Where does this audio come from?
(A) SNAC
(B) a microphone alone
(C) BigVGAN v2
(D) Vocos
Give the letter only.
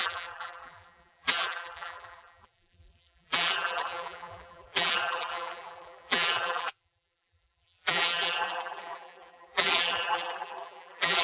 C